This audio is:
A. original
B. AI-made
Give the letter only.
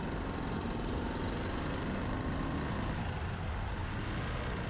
A